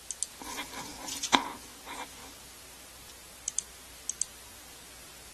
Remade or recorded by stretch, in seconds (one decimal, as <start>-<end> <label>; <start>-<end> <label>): 0.0-5.3 recorded